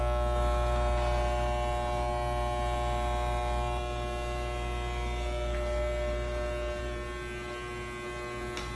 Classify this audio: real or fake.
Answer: real